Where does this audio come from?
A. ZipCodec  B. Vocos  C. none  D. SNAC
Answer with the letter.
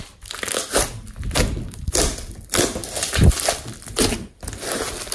C